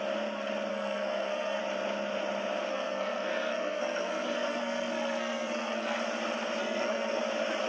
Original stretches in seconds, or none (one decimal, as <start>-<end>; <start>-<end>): 0.0-0.7; 1.6-2.7; 6.0-6.6; 7.2-7.7